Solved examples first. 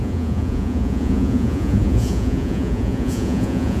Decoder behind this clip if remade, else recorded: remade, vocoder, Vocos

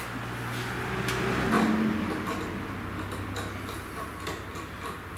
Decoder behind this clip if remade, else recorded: recorded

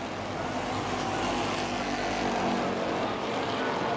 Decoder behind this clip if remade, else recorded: recorded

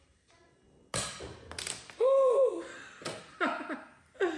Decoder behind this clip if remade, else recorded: recorded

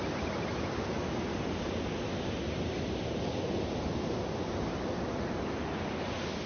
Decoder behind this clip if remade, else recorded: recorded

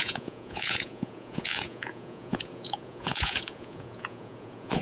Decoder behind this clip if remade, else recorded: remade, vocoder, Vocos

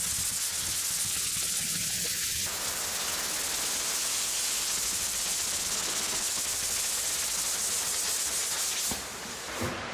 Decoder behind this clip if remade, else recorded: recorded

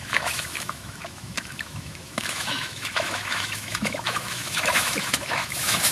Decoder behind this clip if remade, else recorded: remade, autoencoder, DAC-VAE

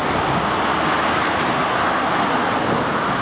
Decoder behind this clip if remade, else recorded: recorded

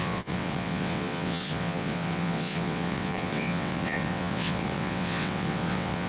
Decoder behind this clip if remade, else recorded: remade, vocoder, WaveNeXt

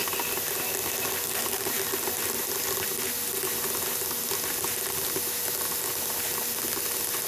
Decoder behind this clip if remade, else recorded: recorded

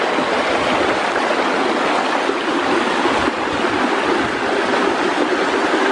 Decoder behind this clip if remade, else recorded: recorded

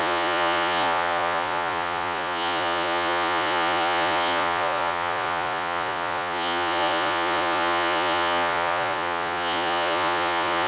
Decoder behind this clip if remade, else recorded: remade, vocoder, Vocos